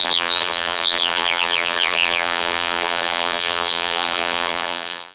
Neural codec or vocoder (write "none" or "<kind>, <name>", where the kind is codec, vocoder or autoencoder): vocoder, BigVGAN v2